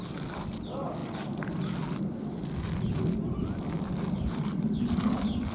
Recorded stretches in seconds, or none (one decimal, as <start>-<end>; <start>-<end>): 0.0-5.5